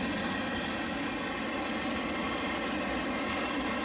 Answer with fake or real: real